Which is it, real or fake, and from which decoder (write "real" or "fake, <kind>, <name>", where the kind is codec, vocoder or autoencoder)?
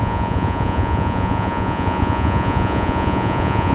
fake, vocoder, Vocos